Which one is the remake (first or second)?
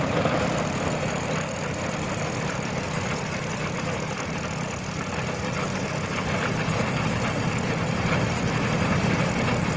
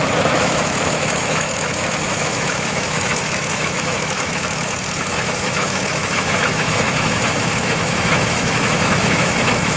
second